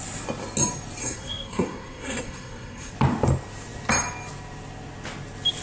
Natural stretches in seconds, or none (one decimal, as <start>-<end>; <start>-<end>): 0.0-1.0; 2.9-5.6